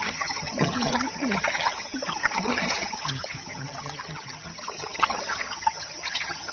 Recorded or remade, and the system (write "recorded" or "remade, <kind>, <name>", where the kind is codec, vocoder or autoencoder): remade, vocoder, HiFi-GAN